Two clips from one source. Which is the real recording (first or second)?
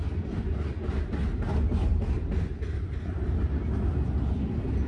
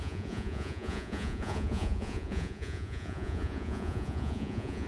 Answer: first